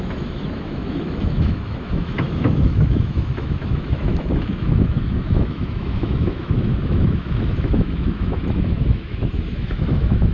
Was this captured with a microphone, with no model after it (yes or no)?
no